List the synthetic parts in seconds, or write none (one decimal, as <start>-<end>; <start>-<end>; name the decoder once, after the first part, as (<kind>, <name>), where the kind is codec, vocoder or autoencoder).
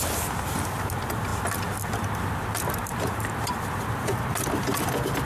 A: 1.3-3.5 (vocoder, BigVGAN v2)